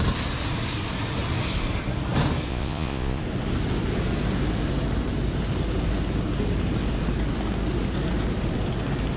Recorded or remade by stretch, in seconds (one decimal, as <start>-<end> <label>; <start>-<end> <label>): 0.0-2.5 recorded; 2.5-3.2 remade; 3.2-9.2 recorded